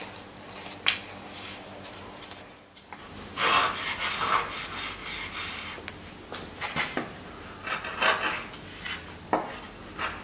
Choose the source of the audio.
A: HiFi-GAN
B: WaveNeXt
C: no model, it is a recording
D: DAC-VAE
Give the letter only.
C